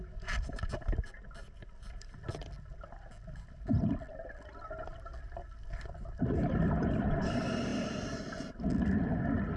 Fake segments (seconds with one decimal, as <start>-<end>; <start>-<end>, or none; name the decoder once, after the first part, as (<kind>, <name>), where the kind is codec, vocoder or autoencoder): 0.0-5.1 (vocoder, BigVGAN v2); 5.9-7.7

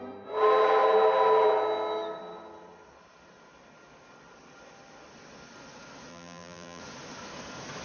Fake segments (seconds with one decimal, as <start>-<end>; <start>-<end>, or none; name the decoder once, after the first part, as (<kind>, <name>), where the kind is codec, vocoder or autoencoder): 6.1-6.8 (vocoder, BigVGAN v2)

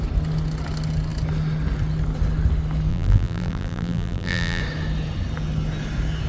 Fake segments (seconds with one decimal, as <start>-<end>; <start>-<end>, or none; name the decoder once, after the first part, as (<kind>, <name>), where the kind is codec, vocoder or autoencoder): 2.9-4.6 (vocoder, BigVGAN v2)

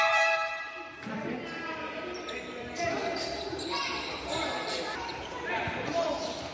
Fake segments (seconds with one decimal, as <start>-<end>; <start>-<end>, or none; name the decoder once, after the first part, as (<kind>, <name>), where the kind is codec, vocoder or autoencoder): 0.0-6.5 (vocoder, BigVGAN v2)

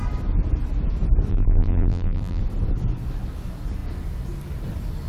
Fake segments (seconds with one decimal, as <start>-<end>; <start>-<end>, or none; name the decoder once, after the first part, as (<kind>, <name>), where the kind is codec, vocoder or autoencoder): 1.3-2.4 (vocoder, BigVGAN v2)

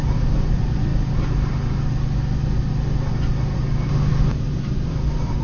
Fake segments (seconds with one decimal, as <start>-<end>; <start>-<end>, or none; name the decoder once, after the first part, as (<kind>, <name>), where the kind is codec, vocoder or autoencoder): 0.0-0.9 (vocoder, BigVGAN v2); 4.1-5.4

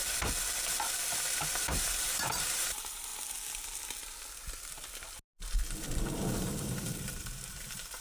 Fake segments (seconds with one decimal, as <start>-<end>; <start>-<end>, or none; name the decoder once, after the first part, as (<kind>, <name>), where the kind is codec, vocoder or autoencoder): 1.6-3.1 (vocoder, BigVGAN v2); 6.3-8.0